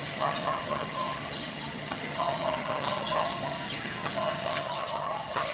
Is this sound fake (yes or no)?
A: yes